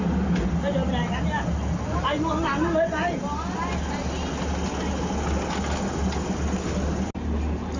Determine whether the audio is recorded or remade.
recorded